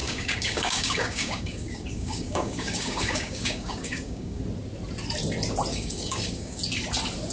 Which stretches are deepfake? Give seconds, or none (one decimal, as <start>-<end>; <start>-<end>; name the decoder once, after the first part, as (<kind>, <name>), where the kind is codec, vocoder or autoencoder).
0.0-4.4 (codec, DAC); 5.7-6.6